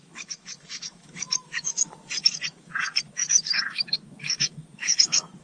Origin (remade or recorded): remade